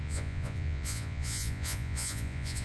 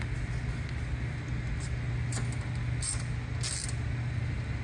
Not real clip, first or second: first